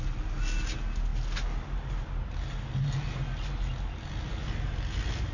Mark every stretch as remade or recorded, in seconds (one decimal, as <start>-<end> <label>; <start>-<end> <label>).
0.0-5.3 recorded